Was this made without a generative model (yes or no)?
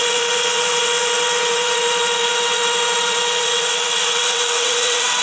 no